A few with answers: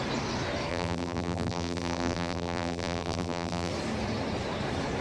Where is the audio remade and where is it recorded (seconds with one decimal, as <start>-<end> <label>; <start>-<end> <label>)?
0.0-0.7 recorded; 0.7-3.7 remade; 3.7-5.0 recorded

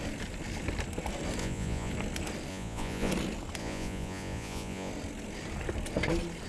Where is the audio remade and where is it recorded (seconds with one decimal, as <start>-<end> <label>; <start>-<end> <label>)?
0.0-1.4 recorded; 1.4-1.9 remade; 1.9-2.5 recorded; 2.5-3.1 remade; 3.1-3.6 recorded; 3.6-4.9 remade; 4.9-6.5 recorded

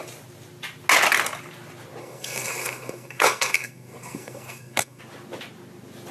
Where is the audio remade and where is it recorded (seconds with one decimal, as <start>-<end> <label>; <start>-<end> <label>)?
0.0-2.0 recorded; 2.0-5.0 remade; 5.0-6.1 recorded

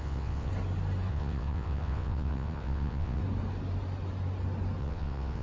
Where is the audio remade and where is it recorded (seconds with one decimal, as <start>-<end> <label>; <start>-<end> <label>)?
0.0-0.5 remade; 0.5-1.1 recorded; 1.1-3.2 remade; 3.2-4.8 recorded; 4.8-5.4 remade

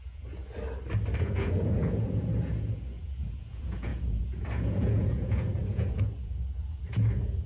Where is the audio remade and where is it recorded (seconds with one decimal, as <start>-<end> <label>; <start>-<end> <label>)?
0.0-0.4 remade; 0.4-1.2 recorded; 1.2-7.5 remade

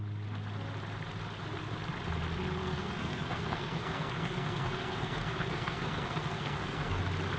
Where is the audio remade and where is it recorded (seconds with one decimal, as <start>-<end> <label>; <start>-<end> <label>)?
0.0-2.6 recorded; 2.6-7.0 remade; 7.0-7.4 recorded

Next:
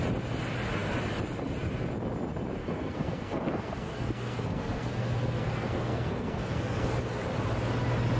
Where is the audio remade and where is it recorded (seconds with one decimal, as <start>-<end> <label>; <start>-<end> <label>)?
0.0-2.6 recorded; 2.6-7.0 remade; 7.0-8.2 recorded

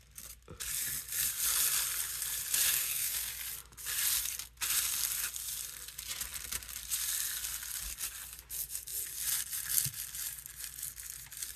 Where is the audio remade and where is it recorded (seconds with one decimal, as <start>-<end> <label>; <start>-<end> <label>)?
0.0-2.7 recorded; 2.7-3.3 remade; 3.3-11.6 recorded